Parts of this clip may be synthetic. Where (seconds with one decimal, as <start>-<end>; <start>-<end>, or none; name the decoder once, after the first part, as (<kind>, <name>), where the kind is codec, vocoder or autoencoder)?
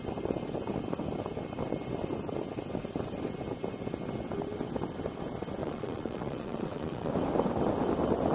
5.6-7.1 (vocoder, Vocos)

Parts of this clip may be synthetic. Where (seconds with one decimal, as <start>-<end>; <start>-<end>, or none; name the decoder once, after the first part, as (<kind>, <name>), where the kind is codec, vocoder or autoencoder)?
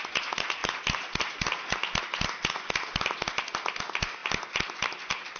none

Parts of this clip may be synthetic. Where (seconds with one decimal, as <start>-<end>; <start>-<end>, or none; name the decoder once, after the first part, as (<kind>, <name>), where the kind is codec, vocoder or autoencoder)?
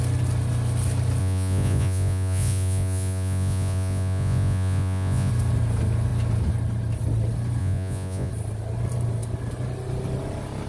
1.2-5.3 (vocoder, Vocos); 7.6-8.3